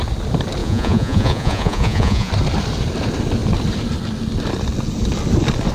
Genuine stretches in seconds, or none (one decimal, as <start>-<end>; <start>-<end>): 0.0-0.6; 2.3-5.7